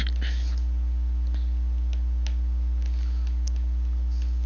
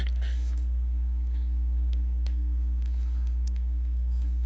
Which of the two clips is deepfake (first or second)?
second